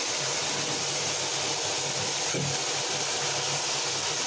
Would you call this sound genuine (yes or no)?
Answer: yes